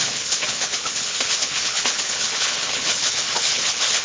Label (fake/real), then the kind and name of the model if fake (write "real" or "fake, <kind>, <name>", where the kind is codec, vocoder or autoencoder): fake, codec, HILCodec